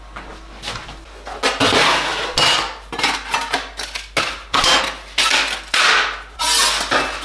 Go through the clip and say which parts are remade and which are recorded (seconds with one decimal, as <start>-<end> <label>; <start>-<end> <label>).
0.0-7.2 recorded

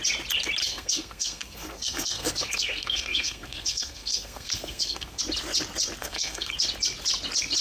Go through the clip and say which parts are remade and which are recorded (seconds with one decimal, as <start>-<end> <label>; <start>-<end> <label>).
0.0-0.6 recorded; 0.6-5.2 remade; 5.2-6.0 recorded; 6.0-6.5 remade; 6.5-7.6 recorded

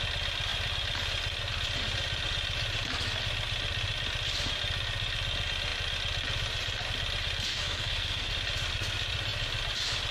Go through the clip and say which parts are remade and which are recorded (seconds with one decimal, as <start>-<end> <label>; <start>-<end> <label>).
0.0-7.5 recorded; 7.5-8.3 remade; 8.3-10.1 recorded

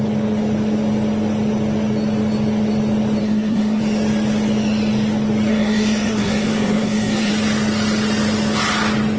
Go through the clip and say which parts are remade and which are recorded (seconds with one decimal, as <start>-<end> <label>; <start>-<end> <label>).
0.0-3.2 recorded; 3.2-3.8 remade; 3.8-5.5 recorded; 5.5-7.3 remade; 7.3-9.2 recorded